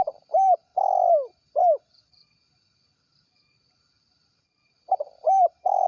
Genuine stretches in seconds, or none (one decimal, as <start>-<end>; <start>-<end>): 0.7-3.7